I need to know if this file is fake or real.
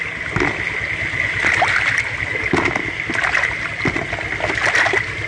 real